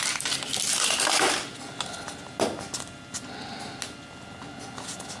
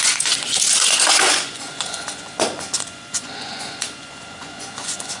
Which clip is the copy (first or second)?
second